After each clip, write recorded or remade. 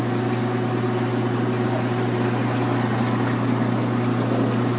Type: recorded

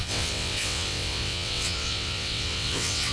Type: remade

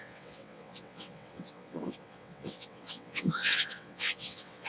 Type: remade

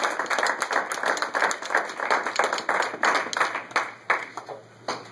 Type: recorded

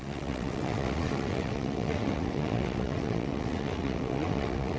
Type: remade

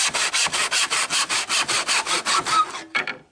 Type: recorded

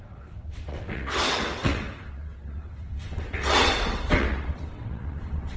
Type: remade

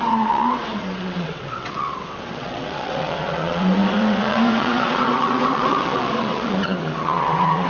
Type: remade